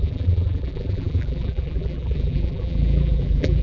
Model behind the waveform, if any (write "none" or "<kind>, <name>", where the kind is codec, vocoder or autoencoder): vocoder, BigVGAN v2